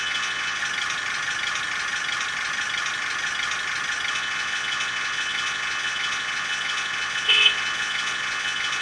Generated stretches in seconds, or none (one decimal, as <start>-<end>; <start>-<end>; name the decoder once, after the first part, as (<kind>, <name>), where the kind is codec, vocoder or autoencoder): 0.0-0.6 (vocoder, Vocos); 4.1-8.8